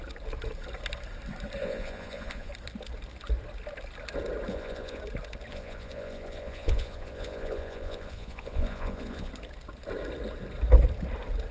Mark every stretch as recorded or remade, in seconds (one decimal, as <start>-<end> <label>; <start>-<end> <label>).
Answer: 0.0-1.6 recorded; 1.6-2.5 remade; 2.5-4.5 recorded; 4.5-5.0 remade; 5.0-5.5 recorded; 5.5-9.3 remade; 9.3-11.5 recorded